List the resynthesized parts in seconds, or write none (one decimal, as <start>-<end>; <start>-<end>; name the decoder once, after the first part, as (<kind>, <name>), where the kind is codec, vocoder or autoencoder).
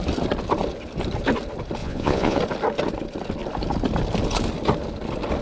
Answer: 1.8-2.4 (vocoder, Vocos)